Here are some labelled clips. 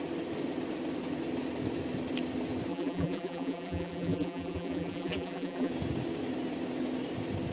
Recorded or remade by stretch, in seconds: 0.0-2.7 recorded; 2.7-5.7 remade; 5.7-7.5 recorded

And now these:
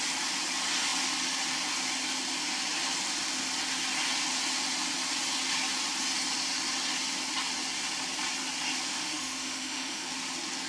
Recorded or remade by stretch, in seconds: 0.0-8.9 recorded; 8.9-10.1 remade; 10.1-10.7 recorded

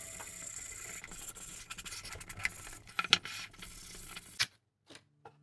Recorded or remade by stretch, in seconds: 0.0-5.4 recorded